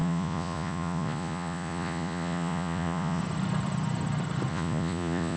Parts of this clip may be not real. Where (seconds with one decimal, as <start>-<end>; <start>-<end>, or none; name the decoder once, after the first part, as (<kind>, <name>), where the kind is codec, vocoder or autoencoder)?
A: 0.0-3.2 (vocoder, Vocos); 4.5-5.4

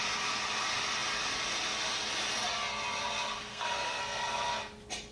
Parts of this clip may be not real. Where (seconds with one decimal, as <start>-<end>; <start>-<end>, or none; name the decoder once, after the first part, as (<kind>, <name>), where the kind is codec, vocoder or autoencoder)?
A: 3.5-4.0 (codec, SNAC)

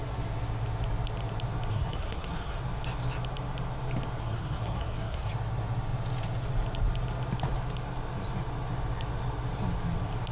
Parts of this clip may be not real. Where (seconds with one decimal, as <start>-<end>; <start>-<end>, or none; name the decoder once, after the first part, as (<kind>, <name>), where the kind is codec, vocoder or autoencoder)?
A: 1.7-2.6 (codec, SNAC); 4.2-5.3

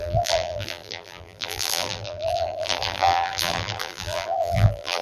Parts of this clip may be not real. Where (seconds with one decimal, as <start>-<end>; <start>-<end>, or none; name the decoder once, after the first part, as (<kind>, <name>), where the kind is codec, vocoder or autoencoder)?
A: 0.0-5.0 (vocoder, BigVGAN v2)

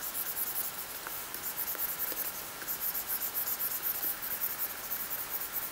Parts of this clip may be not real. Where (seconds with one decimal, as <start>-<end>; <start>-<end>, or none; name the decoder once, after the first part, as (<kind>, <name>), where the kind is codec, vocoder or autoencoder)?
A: none

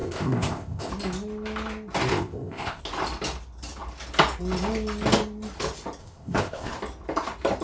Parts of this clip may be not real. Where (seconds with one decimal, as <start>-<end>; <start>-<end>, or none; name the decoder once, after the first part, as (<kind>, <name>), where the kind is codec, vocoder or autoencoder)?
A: 0.0-0.9 (codec, ZipCodec); 2.1-2.8; 6.0-6.7

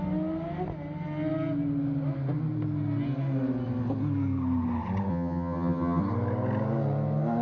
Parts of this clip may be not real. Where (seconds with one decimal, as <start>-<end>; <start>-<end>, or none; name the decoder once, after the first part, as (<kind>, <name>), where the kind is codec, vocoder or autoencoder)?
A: 5.1-6.0 (vocoder, HiFi-GAN)